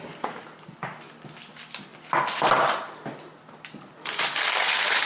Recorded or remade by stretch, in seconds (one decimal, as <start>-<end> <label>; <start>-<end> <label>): 0.0-5.1 recorded